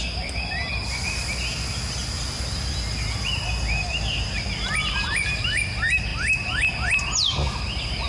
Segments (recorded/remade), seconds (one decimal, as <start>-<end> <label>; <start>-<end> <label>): 0.0-8.1 recorded